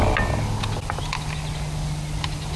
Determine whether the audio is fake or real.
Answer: real